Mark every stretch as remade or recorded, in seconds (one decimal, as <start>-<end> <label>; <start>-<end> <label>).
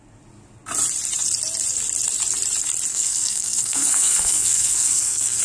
0.0-2.9 recorded; 2.9-5.4 remade